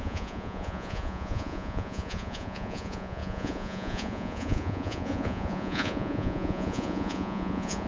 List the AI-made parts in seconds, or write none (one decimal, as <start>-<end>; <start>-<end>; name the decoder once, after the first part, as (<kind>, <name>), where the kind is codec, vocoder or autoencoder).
0.0-7.9 (vocoder, Vocos)